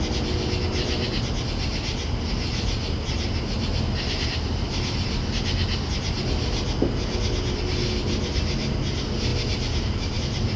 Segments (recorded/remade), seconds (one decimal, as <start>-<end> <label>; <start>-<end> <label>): 0.0-10.6 recorded